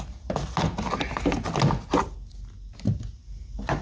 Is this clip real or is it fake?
real